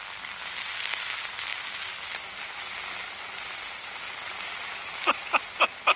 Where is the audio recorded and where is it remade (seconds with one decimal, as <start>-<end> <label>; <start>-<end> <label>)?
0.0-6.0 recorded